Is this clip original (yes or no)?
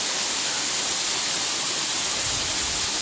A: yes